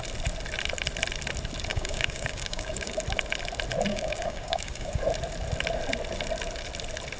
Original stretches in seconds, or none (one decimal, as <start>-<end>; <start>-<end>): 0.0-1.7; 3.0-3.9; 5.0-7.2